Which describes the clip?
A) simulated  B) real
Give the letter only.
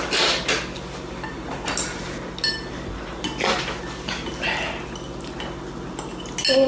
B